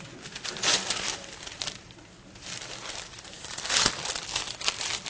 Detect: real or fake real